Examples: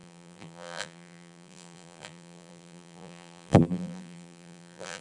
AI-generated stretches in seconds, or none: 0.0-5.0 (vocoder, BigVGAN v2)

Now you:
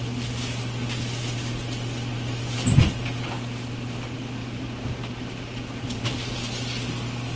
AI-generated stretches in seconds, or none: 4.4-6.0 (vocoder, BigVGAN v2)

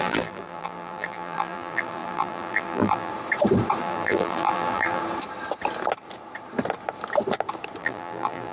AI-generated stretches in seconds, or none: 0.0-3.1 (vocoder, BigVGAN v2); 3.8-5.0; 7.8-8.5

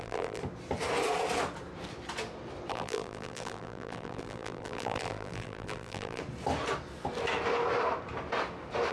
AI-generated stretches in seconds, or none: 0.0-0.4 (vocoder, BigVGAN v2); 2.7-6.2